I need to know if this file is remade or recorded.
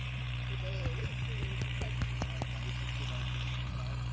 remade